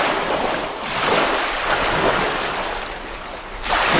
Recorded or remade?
remade